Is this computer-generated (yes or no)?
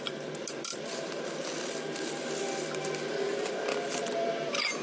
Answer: no